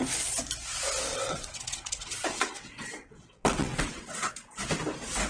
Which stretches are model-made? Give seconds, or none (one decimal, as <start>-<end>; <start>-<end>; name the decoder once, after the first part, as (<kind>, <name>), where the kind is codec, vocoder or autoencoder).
1.1-4.3 (vocoder, WaveNeXt)